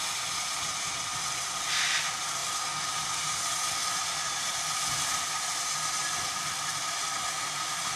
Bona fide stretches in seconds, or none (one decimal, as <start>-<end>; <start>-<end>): 0.0-8.0